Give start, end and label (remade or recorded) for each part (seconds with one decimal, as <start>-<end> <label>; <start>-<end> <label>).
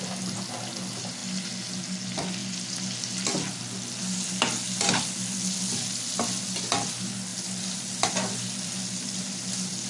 0.0-7.3 recorded; 7.3-9.2 remade; 9.2-9.9 recorded